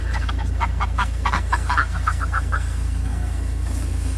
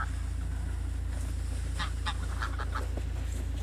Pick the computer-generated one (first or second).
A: first